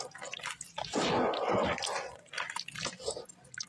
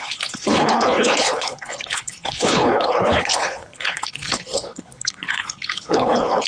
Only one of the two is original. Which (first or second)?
first